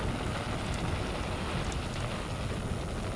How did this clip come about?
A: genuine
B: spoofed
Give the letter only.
A